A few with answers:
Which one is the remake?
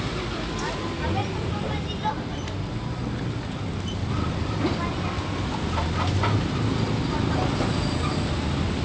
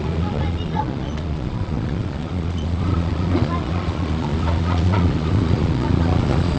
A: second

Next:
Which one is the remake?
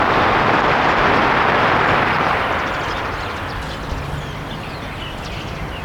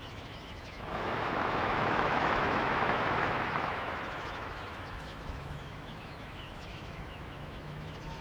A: second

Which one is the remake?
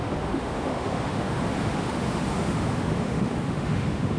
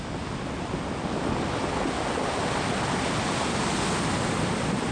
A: first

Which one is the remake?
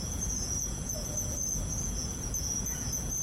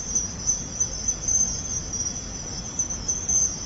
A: first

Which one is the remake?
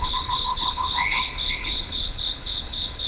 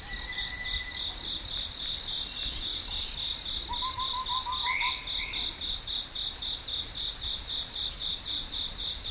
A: first